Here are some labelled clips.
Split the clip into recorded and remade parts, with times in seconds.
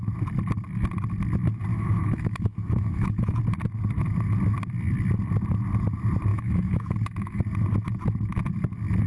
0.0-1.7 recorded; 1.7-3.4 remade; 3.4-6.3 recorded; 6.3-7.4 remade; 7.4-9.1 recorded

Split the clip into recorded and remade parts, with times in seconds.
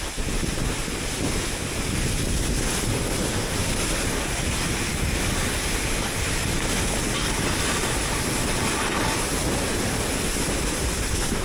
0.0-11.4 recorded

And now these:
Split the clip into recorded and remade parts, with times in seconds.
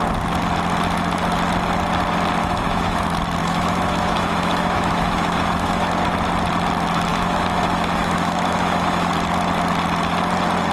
0.0-2.4 recorded; 2.4-3.0 remade; 3.0-3.4 recorded; 3.4-5.9 remade; 5.9-7.1 recorded; 7.1-9.1 remade; 9.1-10.7 recorded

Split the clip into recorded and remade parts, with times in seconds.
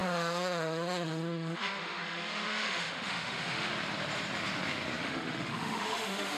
0.0-3.7 remade; 3.7-5.0 recorded; 5.0-6.4 remade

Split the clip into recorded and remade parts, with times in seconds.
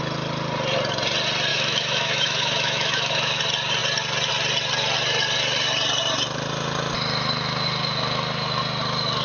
0.0-1.5 recorded; 1.5-3.4 remade; 3.4-9.2 recorded